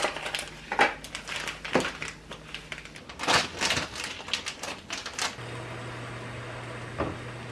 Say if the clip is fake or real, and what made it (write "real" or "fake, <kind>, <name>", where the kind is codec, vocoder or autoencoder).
real